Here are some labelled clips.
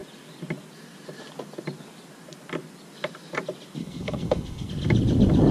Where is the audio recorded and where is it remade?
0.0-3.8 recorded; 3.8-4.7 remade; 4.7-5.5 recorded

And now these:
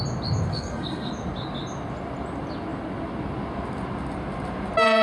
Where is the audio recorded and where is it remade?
0.0-0.5 recorded; 0.5-1.1 remade; 1.1-5.0 recorded

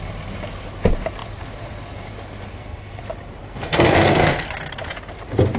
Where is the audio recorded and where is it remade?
0.0-2.5 recorded; 2.5-3.0 remade; 3.0-3.4 recorded; 3.4-4.5 remade; 4.5-5.6 recorded

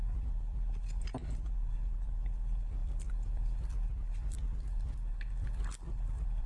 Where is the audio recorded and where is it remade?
0.0-6.5 recorded

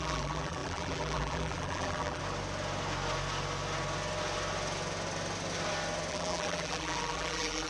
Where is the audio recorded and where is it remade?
0.0-2.2 remade; 2.2-6.1 recorded; 6.1-7.7 remade

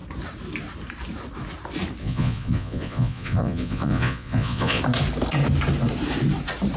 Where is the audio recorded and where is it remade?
0.0-2.0 recorded; 2.0-4.8 remade; 4.8-6.8 recorded

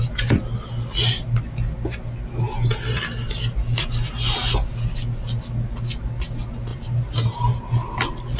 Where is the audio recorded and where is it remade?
0.0-6.7 recorded; 6.7-8.4 remade

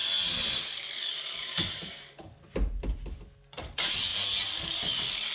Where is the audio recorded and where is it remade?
0.0-3.2 remade; 3.2-5.3 recorded